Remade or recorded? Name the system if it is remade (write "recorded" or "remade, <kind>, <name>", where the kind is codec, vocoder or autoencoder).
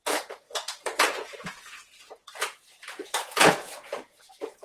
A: remade, vocoder, Vocos